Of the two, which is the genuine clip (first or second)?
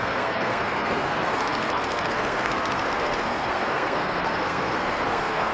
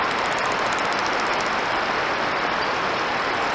second